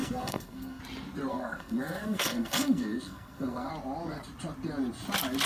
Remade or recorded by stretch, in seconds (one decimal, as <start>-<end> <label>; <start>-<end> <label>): 0.0-0.8 remade; 0.8-1.3 recorded; 1.3-3.7 remade; 3.7-5.5 recorded